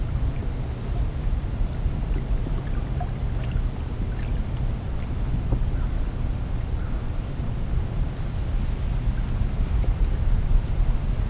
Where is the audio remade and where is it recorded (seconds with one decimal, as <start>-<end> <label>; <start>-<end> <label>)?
0.0-11.3 recorded